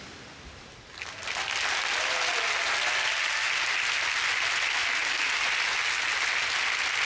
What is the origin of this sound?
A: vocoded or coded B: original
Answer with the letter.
B